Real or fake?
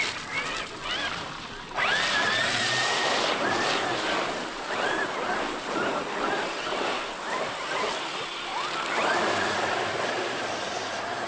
real